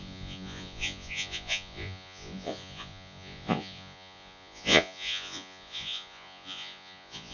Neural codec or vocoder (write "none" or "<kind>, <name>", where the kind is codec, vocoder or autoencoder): vocoder, Vocos